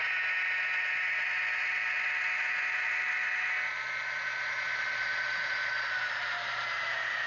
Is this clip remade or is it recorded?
recorded